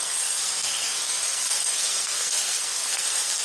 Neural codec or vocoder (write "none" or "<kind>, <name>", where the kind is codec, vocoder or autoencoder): codec, SNAC